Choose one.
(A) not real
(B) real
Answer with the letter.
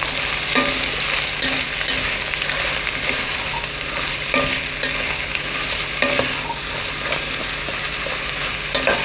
B